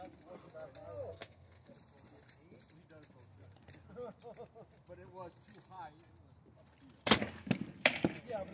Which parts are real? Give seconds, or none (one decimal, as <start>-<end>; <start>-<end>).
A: 0.0-1.1; 1.7-8.5